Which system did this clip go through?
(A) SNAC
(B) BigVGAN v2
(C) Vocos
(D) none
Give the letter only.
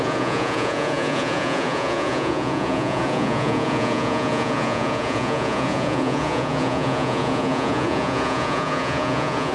C